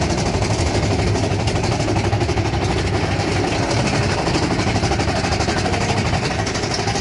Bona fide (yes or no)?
no